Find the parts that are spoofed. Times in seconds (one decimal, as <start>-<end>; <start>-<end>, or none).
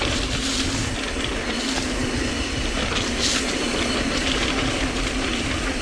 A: none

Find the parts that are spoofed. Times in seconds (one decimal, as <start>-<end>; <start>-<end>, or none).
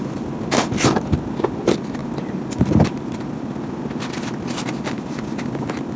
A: none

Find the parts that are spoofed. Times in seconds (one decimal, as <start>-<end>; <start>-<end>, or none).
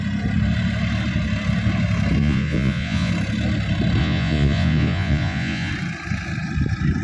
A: 2.2-3.1; 4.0-5.7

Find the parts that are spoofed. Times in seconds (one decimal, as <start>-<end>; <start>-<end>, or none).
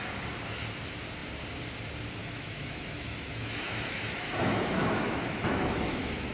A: 2.2-6.3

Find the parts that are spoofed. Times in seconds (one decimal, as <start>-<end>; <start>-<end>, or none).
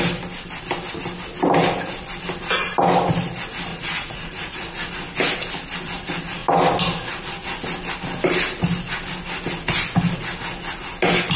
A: 3.7-4.9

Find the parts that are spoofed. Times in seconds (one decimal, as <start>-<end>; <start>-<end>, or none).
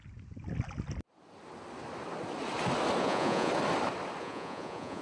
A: 3.0-3.5; 4.2-5.0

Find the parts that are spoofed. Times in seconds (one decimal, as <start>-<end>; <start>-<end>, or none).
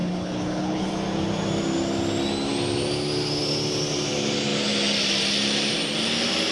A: 0.0-0.9